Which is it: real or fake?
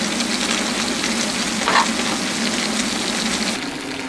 real